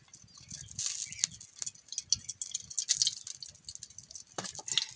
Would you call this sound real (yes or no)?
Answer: yes